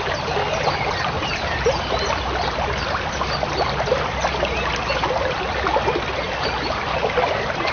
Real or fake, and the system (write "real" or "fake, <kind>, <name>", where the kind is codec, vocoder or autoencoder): real